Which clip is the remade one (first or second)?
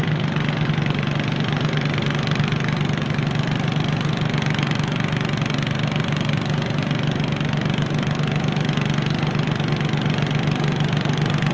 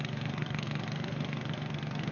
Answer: second